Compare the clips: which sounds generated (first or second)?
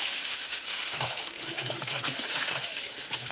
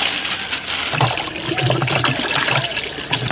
first